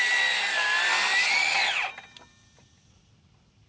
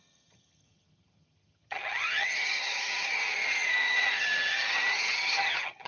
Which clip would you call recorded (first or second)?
first